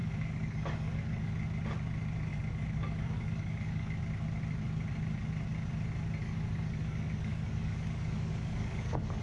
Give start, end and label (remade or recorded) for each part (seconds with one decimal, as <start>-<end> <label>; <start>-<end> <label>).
0.0-1.3 remade; 1.3-2.3 recorded; 2.3-4.0 remade; 4.0-6.2 recorded; 6.2-9.2 remade